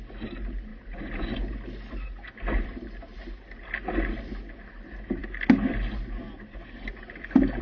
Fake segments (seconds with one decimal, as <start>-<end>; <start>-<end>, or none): none